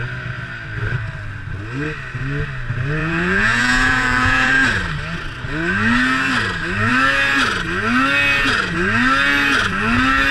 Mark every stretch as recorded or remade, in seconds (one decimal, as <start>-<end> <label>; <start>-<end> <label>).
0.0-3.0 recorded; 3.0-4.5 remade; 4.5-10.3 recorded